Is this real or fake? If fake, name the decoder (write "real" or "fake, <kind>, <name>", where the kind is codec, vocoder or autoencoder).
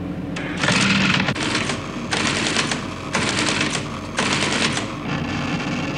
real